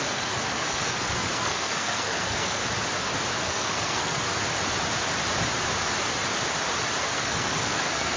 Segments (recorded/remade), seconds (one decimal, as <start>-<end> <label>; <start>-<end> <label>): 0.0-2.6 remade; 2.6-3.4 recorded; 3.4-4.3 remade; 4.3-7.0 recorded; 7.0-8.2 remade